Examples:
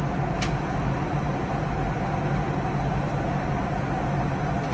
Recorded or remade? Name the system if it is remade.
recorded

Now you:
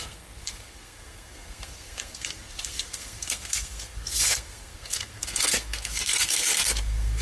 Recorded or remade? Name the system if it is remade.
remade, codec, SNAC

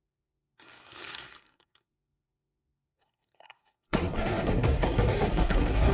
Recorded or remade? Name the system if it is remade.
remade, codec, SNAC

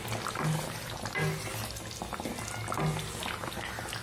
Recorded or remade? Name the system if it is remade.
recorded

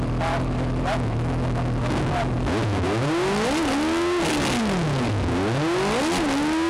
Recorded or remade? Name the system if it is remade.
recorded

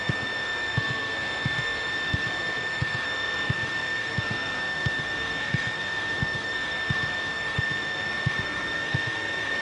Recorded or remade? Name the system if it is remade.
remade, codec, SNAC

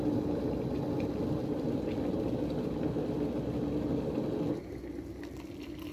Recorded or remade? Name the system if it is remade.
recorded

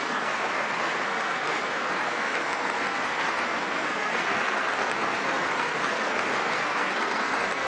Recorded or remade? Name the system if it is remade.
remade, codec, SNAC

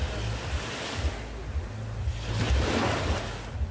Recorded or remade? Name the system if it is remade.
recorded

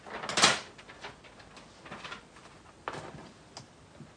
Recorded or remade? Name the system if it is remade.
recorded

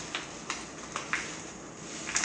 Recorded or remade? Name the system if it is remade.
recorded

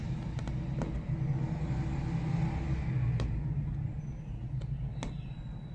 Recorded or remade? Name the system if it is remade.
recorded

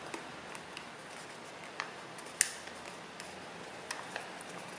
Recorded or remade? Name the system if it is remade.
recorded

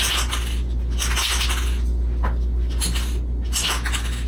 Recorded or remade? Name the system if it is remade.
recorded